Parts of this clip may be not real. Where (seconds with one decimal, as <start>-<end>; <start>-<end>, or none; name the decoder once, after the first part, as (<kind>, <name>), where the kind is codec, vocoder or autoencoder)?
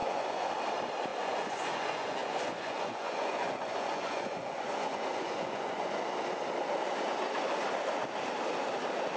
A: 0.0-0.5 (vocoder, Vocos); 1.1-5.9